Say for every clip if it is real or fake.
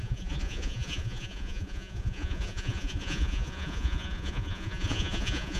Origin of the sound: fake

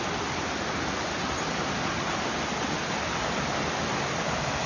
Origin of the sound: real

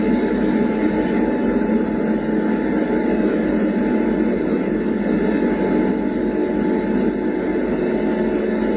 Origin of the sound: real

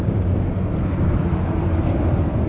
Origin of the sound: fake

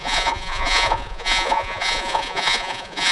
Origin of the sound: fake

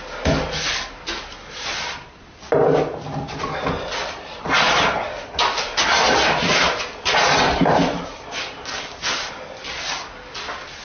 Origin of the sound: real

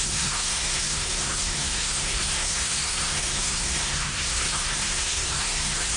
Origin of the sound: fake